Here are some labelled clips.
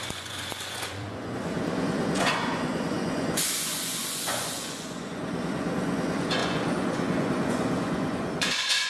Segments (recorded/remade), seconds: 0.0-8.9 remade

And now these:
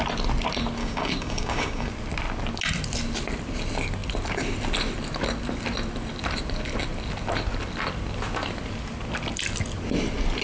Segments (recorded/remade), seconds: 0.0-0.8 recorded; 0.8-1.9 remade; 1.9-10.4 recorded

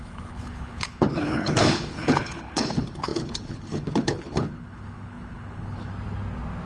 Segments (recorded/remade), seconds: 0.0-5.9 remade; 5.9-6.7 recorded

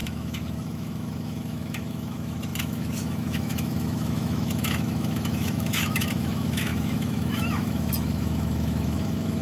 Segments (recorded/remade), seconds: 0.0-9.4 remade

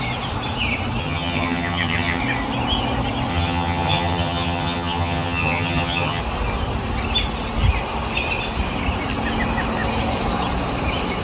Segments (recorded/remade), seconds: 0.0-1.0 recorded; 1.0-2.2 remade; 2.2-3.3 recorded; 3.3-6.2 remade; 6.2-11.2 recorded